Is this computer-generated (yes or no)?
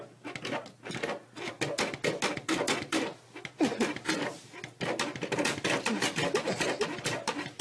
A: no